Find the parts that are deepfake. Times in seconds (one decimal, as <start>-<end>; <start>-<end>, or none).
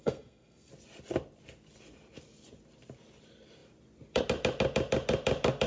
0.0-0.7